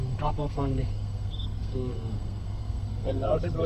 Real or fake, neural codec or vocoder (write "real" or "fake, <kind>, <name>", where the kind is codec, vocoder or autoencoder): fake, codec, SNAC